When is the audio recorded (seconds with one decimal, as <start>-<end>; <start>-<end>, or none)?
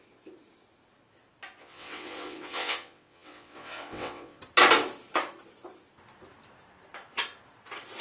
0.0-1.6; 4.4-8.0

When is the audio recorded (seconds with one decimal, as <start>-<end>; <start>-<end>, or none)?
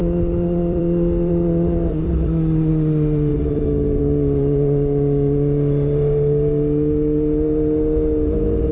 2.7-3.3; 4.0-8.7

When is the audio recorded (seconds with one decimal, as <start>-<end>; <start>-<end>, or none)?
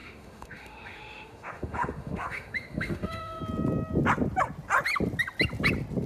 3.4-6.1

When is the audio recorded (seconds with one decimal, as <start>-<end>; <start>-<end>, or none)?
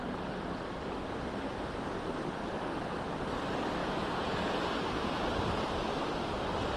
0.0-3.8; 4.6-6.8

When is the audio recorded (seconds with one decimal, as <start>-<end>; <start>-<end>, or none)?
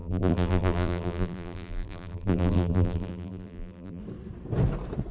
4.0-5.1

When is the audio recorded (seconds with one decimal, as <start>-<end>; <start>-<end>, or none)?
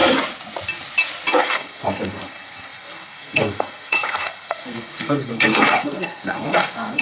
0.0-1.4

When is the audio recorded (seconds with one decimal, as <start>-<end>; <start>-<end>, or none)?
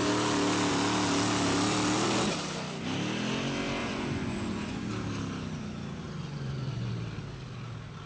0.0-3.8; 4.9-6.2; 6.9-8.1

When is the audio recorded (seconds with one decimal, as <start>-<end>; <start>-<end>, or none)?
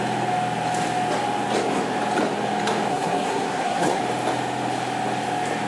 0.0-2.9; 4.0-5.7